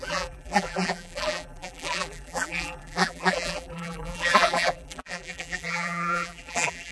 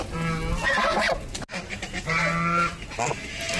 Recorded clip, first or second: second